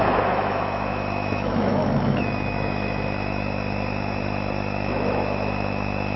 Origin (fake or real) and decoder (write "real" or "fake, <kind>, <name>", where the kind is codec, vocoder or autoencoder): fake, autoencoder, DAC-VAE